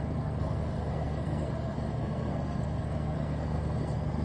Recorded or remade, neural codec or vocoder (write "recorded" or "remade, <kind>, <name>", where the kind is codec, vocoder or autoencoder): remade, codec, SNAC